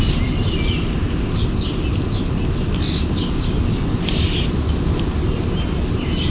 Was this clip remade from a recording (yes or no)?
no